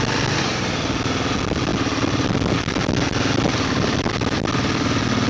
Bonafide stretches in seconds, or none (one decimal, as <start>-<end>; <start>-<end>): 0.0-5.3